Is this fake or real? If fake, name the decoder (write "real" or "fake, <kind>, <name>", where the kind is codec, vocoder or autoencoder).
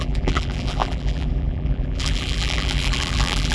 fake, vocoder, BigVGAN v2